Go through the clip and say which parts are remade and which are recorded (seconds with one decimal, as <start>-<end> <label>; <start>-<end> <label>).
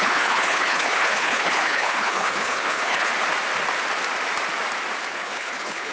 0.0-3.1 remade; 3.1-5.1 recorded; 5.1-5.9 remade